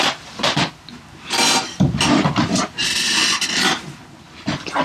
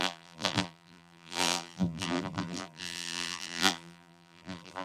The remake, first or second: second